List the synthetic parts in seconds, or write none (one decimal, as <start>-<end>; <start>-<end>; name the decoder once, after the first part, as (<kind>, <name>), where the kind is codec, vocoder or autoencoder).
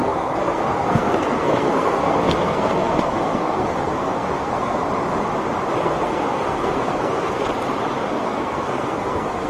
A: 0.0-4.8 (codec, SNAC); 5.8-7.4; 8.1-9.5